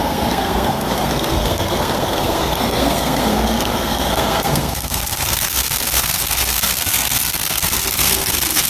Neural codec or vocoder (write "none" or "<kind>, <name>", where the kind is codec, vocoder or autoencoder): codec, SNAC